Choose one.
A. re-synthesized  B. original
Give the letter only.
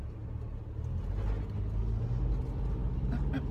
B